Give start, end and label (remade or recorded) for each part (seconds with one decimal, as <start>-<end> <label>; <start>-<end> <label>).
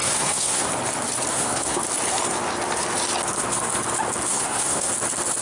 0.0-0.7 remade; 0.7-1.3 recorded; 1.3-1.8 remade; 1.8-4.3 recorded; 4.3-4.9 remade; 4.9-5.4 recorded